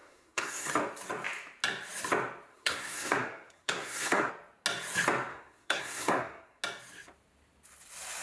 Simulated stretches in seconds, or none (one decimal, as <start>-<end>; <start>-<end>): 0.0-0.7; 2.5-4.3; 5.3-6.6